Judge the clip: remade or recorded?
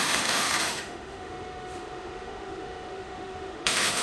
remade